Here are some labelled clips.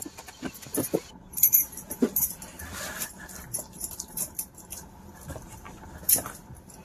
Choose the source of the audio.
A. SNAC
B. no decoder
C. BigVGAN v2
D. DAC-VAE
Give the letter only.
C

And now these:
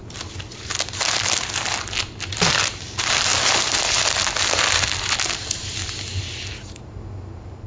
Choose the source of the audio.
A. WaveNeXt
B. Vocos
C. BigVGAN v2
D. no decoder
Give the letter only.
D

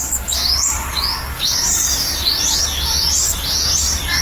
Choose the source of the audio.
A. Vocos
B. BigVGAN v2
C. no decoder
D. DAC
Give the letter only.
D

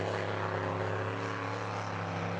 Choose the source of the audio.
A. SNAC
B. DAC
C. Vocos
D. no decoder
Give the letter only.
D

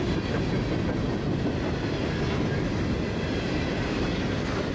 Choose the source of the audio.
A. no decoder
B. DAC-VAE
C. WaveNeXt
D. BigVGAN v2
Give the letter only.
A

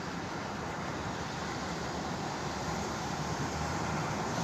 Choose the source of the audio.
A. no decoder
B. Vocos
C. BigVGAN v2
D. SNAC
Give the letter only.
C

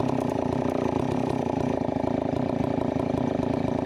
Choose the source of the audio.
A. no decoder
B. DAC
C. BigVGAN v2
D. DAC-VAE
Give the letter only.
A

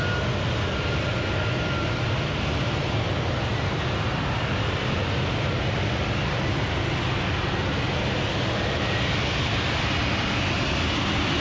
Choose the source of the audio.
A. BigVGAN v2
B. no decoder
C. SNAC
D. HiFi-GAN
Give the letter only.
B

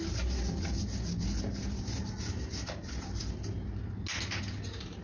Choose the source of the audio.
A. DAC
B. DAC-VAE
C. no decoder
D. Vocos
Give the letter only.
C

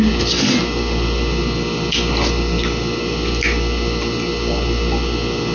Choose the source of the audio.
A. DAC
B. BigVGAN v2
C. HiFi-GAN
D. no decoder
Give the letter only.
D